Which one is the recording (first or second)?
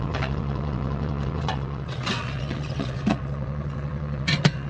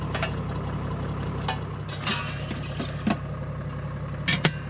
second